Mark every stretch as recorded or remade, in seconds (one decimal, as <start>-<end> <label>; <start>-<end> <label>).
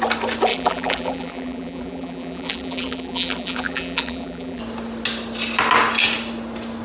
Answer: 0.0-0.5 recorded; 0.5-4.6 remade; 4.6-6.8 recorded